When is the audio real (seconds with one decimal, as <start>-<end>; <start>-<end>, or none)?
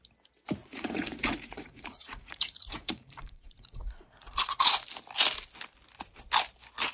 0.0-0.6; 4.7-6.9